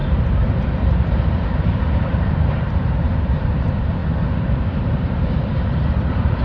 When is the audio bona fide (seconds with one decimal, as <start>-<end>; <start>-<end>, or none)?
4.0-4.7